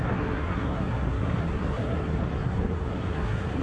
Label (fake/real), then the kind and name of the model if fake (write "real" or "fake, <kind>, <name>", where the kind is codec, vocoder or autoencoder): fake, codec, SNAC